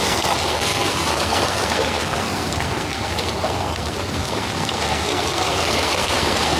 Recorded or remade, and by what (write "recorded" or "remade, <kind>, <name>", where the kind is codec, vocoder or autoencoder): remade, codec, SNAC